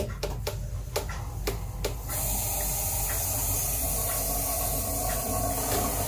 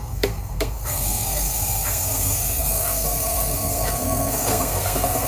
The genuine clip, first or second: first